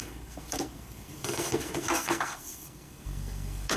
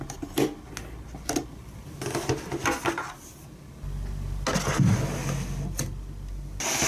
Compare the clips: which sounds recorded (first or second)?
second